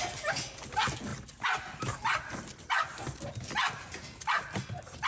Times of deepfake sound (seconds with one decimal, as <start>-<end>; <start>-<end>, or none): none